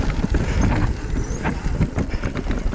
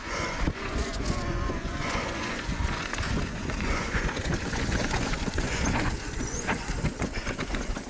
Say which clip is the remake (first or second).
second